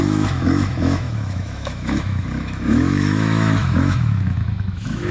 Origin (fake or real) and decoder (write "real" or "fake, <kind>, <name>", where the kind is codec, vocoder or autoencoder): fake, autoencoder, DAC-VAE